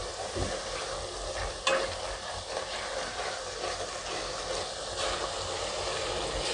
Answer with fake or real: real